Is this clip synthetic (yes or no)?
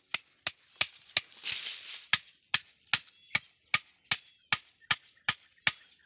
no